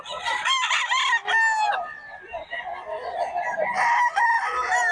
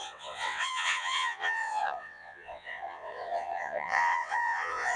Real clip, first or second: first